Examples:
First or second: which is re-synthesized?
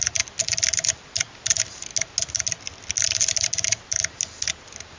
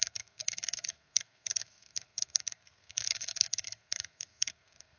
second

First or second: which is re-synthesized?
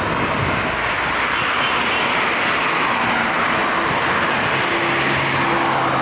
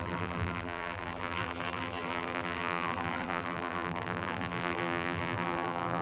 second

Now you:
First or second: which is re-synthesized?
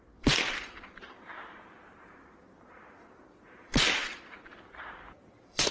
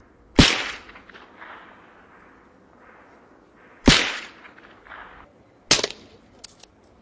first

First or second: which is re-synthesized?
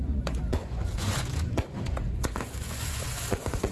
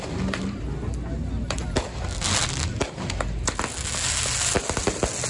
first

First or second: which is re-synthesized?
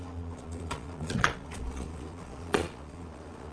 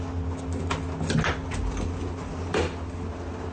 first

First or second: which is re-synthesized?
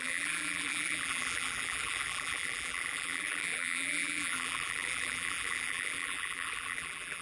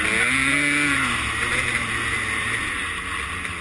first